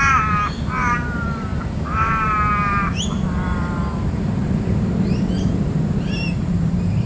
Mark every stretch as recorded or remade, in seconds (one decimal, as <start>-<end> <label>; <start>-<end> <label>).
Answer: 0.0-7.1 remade